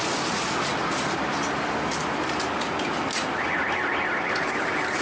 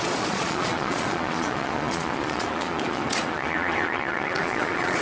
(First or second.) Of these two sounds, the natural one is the first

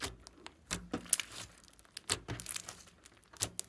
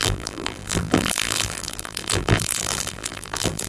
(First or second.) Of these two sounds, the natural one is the first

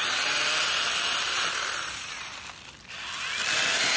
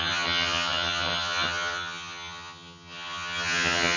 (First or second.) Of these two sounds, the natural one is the first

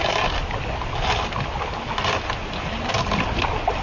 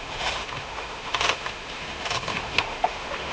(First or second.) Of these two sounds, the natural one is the first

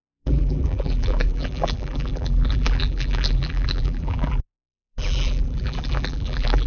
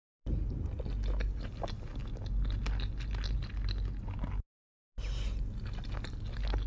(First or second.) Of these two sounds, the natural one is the second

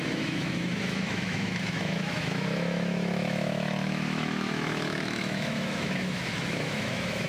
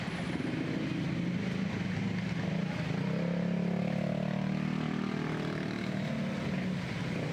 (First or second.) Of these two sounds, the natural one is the second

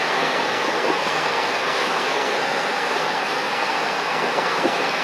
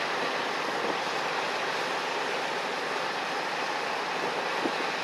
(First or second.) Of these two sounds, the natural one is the second